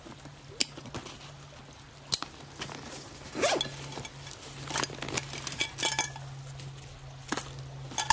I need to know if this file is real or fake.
real